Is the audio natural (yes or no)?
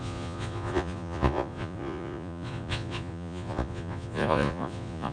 no